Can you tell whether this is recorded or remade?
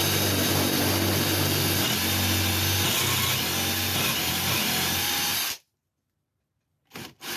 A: recorded